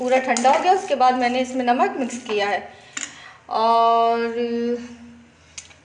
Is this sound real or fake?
real